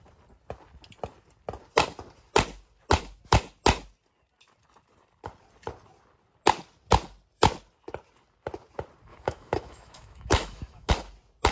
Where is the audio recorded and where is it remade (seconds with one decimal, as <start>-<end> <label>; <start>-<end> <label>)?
0.0-9.1 recorded; 9.1-10.9 remade; 10.9-11.5 recorded